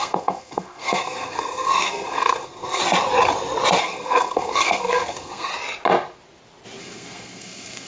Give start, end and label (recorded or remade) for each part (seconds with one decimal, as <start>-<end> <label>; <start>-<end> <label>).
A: 0.0-2.8 remade; 2.8-3.8 recorded; 3.8-5.5 remade; 5.5-6.8 recorded; 6.8-7.9 remade